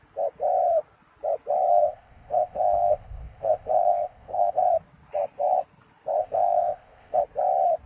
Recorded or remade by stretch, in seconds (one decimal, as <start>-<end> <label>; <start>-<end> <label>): 0.0-1.7 recorded; 1.7-4.7 remade; 4.7-6.2 recorded; 6.2-7.2 remade; 7.2-7.9 recorded